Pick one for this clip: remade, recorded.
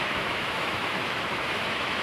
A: remade